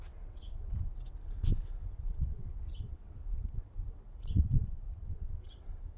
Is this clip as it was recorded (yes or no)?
no